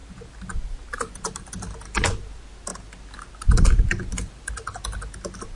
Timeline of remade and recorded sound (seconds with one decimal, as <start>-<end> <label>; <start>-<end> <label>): 0.0-1.5 remade; 1.5-5.5 recorded